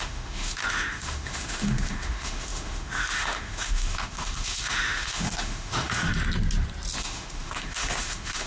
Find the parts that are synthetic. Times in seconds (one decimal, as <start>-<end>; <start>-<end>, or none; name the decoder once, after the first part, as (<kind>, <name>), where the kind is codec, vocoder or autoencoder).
0.0-6.1 (autoencoder, DAC-VAE); 7.0-8.5